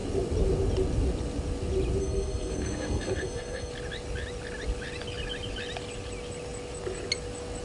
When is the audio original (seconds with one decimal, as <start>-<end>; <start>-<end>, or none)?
0.0-2.0; 3.7-7.6